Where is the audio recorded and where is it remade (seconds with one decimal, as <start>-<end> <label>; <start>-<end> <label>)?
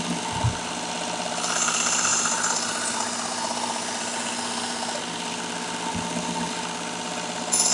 0.0-7.7 recorded